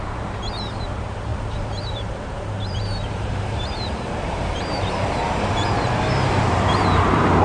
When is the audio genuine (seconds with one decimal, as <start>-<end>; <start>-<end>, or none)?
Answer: none